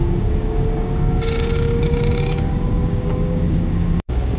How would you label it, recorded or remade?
remade